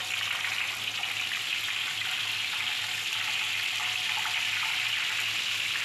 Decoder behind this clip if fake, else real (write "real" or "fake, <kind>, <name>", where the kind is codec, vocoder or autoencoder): real